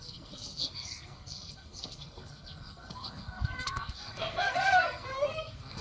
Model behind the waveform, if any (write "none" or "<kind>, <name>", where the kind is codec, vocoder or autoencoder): codec, SNAC